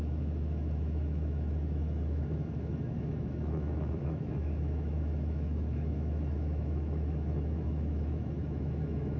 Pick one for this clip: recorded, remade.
remade